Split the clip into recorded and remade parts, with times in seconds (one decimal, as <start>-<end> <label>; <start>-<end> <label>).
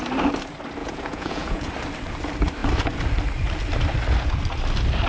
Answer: 0.0-0.8 recorded; 0.8-1.7 remade; 1.7-5.1 recorded